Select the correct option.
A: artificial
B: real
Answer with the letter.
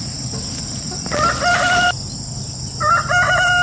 B